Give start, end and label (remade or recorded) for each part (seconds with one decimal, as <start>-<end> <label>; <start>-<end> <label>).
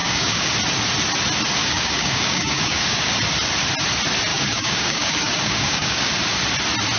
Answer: 0.0-0.5 remade; 0.5-1.6 recorded; 1.6-3.1 remade; 3.1-4.3 recorded; 4.3-6.1 remade; 6.1-7.0 recorded